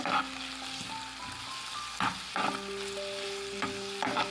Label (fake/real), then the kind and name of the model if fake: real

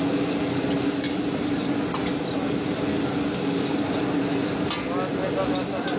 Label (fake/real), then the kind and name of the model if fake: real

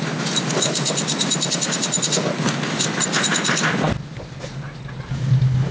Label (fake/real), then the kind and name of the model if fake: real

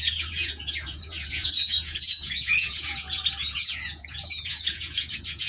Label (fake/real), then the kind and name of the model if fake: fake, vocoder, Vocos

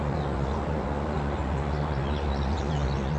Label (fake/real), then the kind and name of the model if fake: fake, vocoder, Vocos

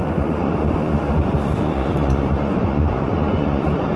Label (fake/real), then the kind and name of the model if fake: fake, vocoder, Vocos